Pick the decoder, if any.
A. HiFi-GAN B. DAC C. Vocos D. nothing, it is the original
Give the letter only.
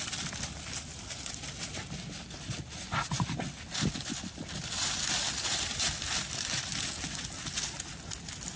D